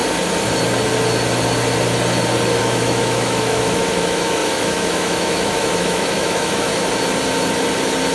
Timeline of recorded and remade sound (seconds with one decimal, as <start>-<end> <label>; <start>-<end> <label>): 0.0-2.6 recorded; 2.6-6.7 remade; 6.7-8.1 recorded